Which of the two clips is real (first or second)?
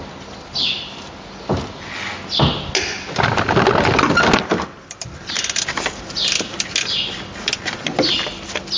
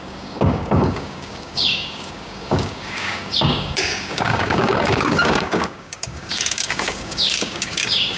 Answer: first